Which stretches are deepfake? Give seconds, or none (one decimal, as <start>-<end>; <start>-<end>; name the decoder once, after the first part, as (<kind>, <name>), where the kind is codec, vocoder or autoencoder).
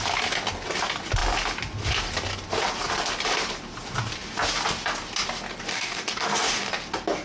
5.7-6.7 (codec, DAC)